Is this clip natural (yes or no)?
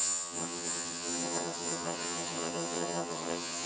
no